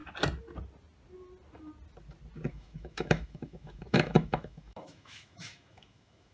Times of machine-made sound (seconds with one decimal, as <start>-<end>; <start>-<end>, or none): 2.5-6.3

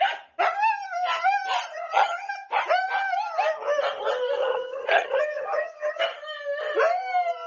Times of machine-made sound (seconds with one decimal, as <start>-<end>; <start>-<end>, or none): 1.7-2.3; 4.4-6.0